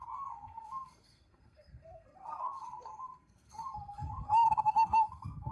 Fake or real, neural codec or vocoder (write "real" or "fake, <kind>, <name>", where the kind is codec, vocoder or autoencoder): fake, codec, SNAC